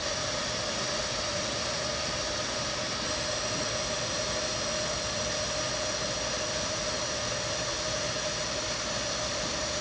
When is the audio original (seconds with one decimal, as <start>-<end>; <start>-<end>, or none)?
0.0-9.8